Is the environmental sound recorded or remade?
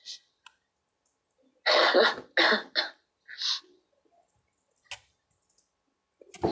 recorded